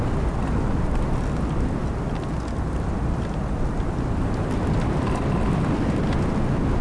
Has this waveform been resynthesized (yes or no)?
no